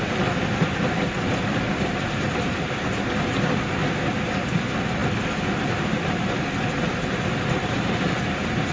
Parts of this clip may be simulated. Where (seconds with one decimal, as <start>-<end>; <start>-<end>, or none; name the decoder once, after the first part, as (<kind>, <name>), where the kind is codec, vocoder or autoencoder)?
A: none